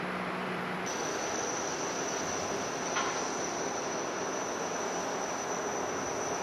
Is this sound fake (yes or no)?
no